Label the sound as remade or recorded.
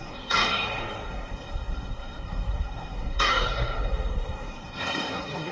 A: remade